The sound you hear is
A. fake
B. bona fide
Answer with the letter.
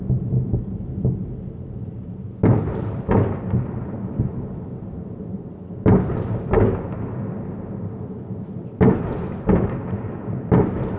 B